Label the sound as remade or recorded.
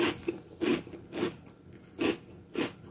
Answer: recorded